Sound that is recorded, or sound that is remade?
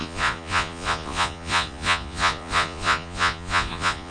remade